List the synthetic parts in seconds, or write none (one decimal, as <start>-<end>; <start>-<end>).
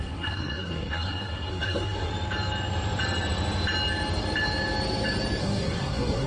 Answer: 0.0-2.1; 5.4-6.3